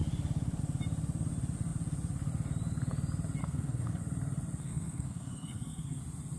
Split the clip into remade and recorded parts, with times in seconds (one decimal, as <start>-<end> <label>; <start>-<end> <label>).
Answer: 0.0-3.4 recorded; 3.4-4.0 remade; 4.0-4.6 recorded; 4.6-6.0 remade; 6.0-6.4 recorded